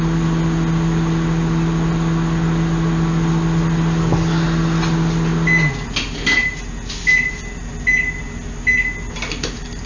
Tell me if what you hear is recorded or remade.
recorded